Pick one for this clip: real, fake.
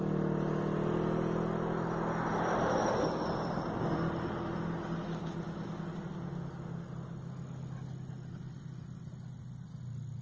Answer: real